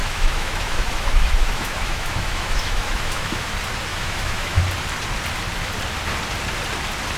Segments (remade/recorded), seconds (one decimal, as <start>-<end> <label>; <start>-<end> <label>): 0.0-3.5 remade; 3.5-3.9 recorded; 3.9-4.6 remade; 4.6-7.2 recorded